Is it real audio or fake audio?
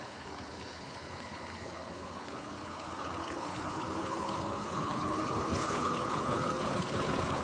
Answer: fake